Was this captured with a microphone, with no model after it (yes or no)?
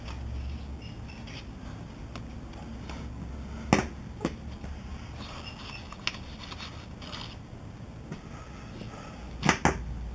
yes